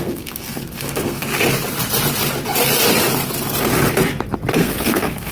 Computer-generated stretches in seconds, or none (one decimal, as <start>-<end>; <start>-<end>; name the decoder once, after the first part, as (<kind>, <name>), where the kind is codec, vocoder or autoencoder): 0.0-1.3 (codec, SNAC); 4.5-5.3